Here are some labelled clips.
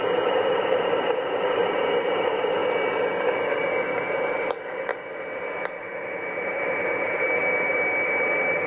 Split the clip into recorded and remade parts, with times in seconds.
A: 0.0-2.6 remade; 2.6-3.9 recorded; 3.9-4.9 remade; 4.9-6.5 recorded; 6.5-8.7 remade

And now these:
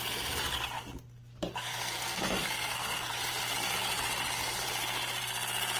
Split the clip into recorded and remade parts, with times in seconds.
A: 0.0-1.5 recorded; 1.5-3.1 remade; 3.1-5.8 recorded